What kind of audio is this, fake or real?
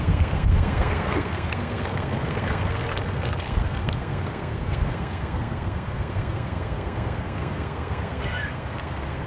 fake